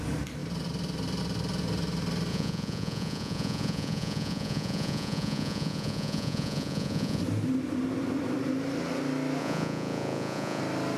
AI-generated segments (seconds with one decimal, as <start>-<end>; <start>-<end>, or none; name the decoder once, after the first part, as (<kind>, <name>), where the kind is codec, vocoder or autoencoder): 2.3-7.2 (vocoder, Vocos); 9.4-10.6